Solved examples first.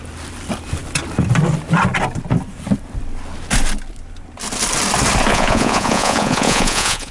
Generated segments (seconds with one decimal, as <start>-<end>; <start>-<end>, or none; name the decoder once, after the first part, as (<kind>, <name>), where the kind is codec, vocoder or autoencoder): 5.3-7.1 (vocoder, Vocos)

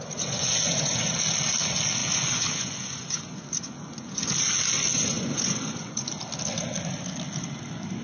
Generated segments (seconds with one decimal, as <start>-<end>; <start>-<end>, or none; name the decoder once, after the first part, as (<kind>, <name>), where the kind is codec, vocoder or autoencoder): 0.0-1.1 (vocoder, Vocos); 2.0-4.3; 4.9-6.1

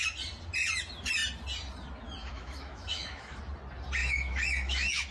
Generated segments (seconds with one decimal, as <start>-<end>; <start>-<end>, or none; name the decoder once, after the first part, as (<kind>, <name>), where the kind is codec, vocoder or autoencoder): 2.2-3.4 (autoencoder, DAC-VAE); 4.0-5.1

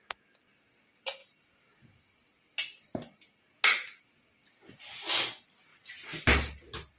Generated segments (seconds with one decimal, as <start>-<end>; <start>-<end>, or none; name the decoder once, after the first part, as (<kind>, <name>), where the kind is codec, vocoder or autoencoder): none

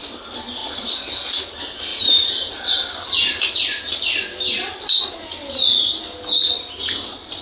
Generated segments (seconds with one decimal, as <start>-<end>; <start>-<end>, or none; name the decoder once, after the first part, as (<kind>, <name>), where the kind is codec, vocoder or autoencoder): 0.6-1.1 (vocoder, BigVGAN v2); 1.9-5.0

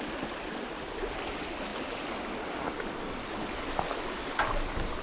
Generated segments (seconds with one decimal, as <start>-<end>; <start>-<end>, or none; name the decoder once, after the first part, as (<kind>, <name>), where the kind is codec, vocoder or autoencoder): none